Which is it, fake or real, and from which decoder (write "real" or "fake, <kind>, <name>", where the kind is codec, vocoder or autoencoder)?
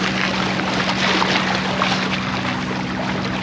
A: real